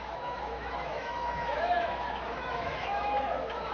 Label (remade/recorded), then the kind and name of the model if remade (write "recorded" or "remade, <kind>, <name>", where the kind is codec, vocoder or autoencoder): remade, autoencoder, DAC-VAE